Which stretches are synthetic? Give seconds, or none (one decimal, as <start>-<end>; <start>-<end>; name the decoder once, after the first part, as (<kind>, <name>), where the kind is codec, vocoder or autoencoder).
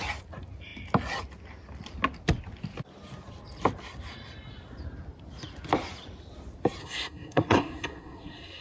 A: 6.8-8.6 (codec, SNAC)